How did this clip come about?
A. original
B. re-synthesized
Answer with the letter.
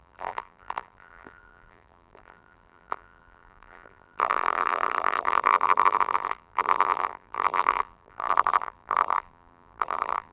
B